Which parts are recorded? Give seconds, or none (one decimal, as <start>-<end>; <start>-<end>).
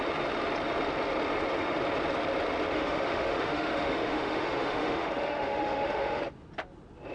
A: 0.0-2.7; 6.2-7.1